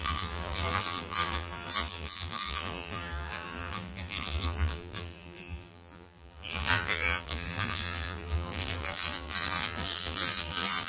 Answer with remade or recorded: remade